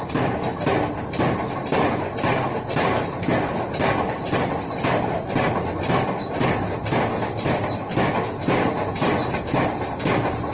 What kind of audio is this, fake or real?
real